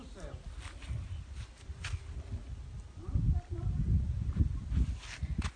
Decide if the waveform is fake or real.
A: real